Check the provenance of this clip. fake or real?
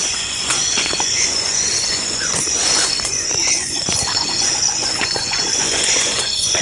fake